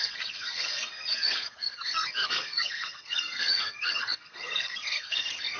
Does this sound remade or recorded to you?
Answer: remade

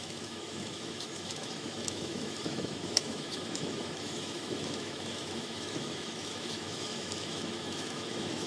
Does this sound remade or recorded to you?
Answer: remade